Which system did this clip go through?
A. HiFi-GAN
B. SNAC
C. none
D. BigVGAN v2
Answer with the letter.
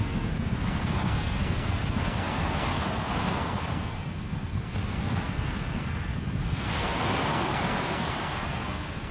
B